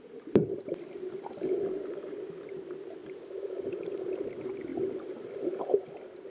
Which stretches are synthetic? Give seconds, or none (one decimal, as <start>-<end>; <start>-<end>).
none